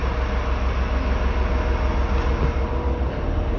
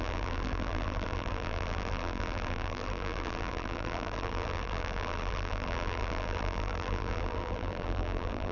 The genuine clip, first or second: first